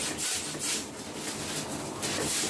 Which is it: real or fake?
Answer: real